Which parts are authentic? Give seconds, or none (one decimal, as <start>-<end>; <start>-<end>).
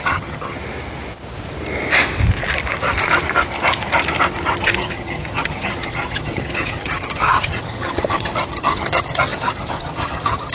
0.6-4.6